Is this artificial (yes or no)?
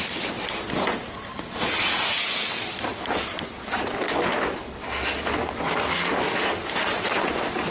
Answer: no